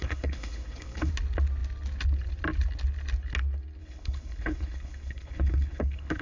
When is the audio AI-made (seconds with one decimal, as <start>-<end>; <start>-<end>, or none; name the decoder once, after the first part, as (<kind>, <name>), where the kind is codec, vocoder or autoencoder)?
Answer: 0.0-1.1 (codec, HILCodec); 3.8-6.2